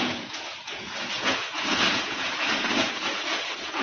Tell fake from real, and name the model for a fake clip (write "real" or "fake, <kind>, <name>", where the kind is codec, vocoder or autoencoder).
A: fake, vocoder, Vocos